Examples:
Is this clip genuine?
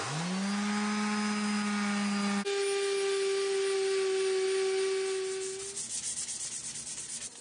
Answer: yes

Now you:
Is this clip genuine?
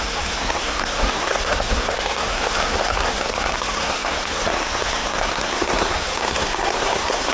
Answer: no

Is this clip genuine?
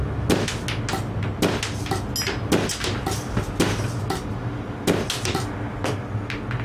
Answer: yes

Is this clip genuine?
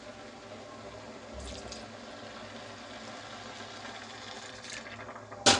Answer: yes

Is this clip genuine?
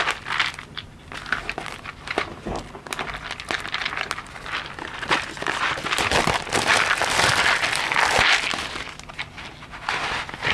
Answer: yes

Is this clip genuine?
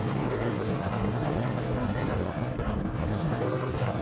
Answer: no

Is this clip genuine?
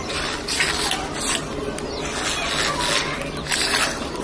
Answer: yes